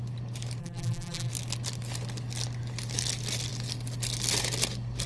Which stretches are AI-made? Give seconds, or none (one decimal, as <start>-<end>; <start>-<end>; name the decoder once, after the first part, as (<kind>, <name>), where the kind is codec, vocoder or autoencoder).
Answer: 0.6-1.3 (vocoder, BigVGAN v2)